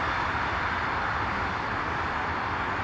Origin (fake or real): real